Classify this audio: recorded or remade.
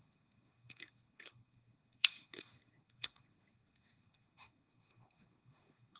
remade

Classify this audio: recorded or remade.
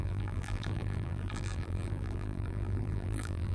remade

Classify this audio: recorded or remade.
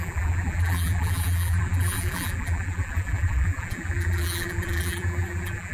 remade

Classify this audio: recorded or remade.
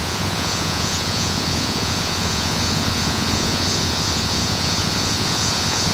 remade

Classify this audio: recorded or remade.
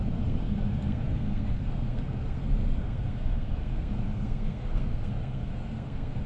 remade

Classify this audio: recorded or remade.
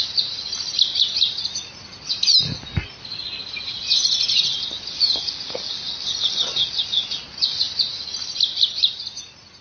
recorded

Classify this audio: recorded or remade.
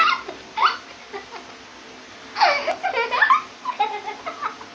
recorded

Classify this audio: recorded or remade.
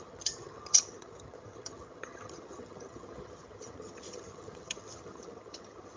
remade